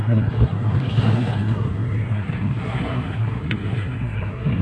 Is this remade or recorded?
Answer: remade